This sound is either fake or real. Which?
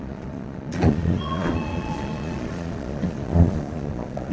fake